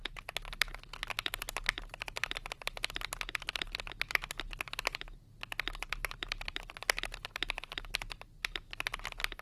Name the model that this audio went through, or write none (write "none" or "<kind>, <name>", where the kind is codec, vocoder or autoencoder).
none